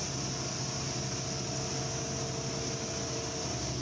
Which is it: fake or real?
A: real